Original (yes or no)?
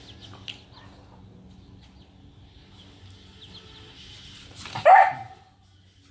yes